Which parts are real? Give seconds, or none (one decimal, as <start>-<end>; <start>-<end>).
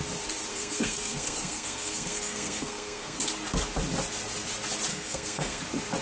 0.0-0.5; 3.2-4.9; 5.6-6.0